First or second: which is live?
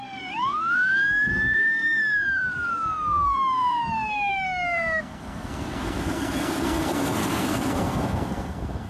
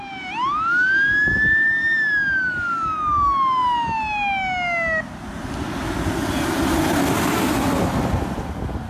second